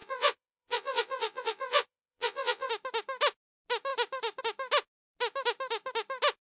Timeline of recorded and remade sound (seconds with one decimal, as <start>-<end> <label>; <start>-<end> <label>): 0.0-2.7 remade; 2.7-6.5 recorded